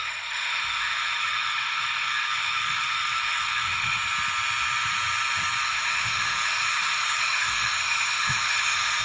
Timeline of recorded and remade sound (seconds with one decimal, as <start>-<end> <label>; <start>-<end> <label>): 0.0-4.0 remade; 4.0-5.6 recorded; 5.6-9.0 remade